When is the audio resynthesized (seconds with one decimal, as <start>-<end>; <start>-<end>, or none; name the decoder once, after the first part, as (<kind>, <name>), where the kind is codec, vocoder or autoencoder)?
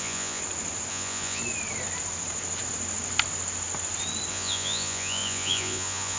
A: 0.0-0.4 (vocoder, Vocos); 0.9-1.4; 4.3-6.2